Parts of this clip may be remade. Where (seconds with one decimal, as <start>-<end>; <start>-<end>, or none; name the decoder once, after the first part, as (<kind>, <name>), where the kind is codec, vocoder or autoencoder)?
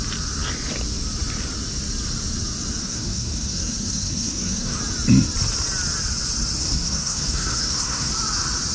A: 2.8-4.8 (codec, SNAC); 6.6-8.1